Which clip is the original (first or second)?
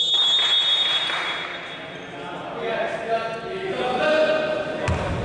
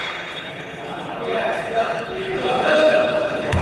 first